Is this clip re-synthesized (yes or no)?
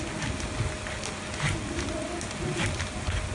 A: no